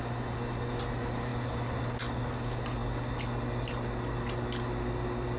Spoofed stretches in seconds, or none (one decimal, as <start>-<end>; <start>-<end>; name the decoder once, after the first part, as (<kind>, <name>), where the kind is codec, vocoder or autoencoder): none